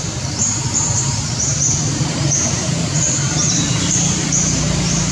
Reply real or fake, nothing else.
fake